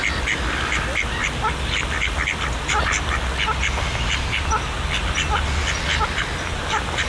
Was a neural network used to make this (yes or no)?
no